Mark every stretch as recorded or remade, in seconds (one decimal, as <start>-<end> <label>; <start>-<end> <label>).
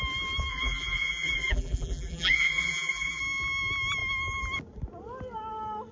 0.0-0.5 recorded; 0.5-3.2 remade; 3.2-5.9 recorded